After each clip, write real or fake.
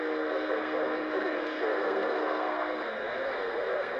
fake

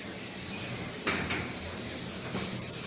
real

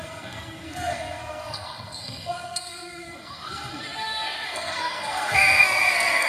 fake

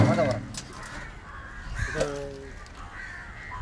real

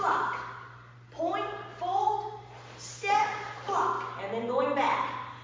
real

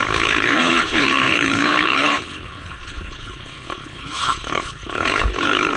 fake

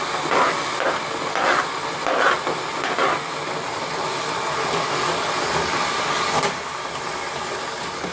real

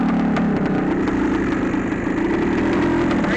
real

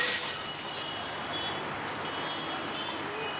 real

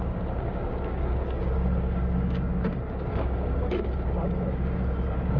fake